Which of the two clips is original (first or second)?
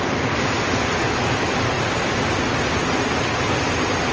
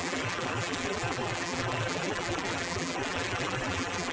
first